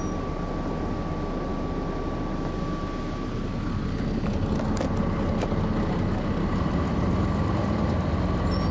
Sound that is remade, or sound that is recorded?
recorded